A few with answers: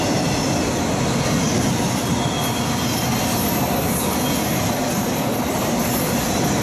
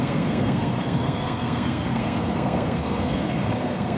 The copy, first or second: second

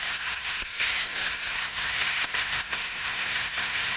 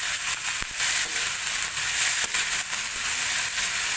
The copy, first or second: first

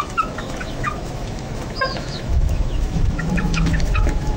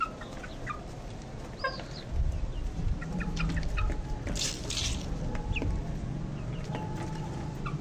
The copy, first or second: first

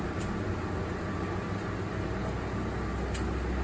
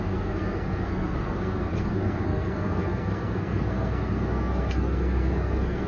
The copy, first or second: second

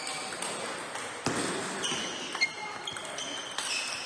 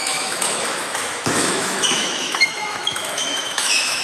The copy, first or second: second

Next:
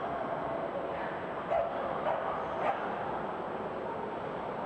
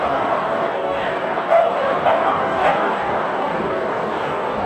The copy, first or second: second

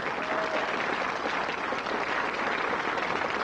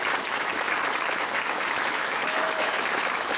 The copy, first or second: second